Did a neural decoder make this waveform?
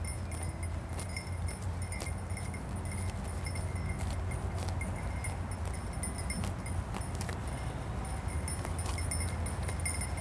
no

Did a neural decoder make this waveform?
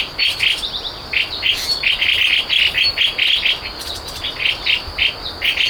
no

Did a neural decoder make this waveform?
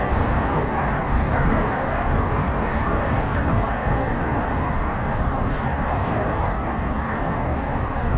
yes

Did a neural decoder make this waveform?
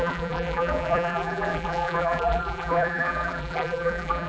yes